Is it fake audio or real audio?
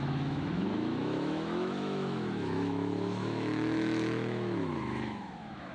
fake